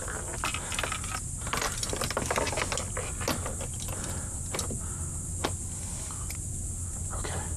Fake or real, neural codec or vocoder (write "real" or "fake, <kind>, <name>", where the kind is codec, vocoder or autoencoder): real